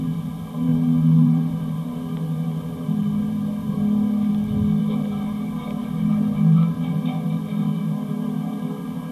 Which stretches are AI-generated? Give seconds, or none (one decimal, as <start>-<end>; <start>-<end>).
0.0-0.7; 1.2-4.3; 4.8-9.1